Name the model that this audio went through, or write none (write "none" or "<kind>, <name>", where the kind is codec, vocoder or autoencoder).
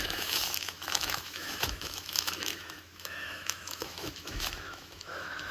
autoencoder, DAC-VAE